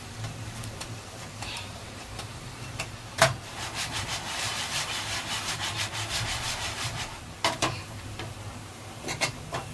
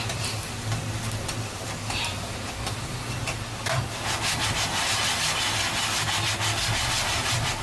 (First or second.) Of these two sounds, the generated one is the first